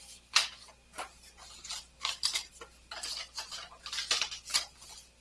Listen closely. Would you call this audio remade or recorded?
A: remade